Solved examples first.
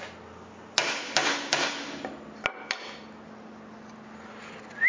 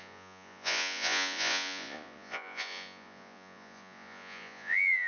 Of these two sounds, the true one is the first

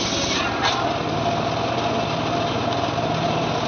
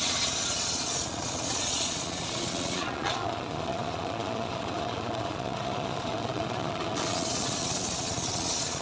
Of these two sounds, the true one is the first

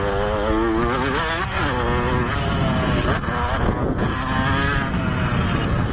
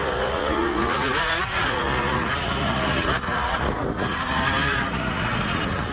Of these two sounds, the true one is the first